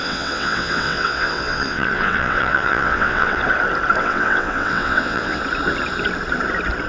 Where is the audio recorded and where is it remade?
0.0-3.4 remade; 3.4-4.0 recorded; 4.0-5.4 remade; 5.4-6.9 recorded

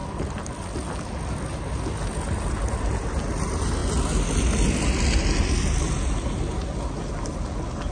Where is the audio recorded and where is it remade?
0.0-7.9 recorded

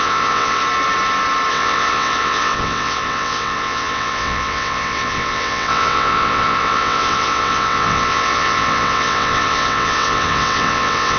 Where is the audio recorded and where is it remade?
0.0-0.6 remade; 0.6-1.5 recorded; 1.5-11.2 remade

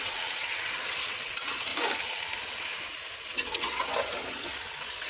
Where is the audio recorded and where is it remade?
0.0-1.7 remade; 1.7-3.2 recorded; 3.2-5.1 remade

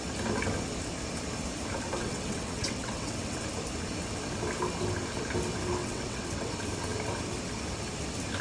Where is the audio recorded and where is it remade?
0.0-2.0 recorded; 2.0-3.4 remade; 3.4-5.8 recorded; 5.8-6.5 remade; 6.5-8.4 recorded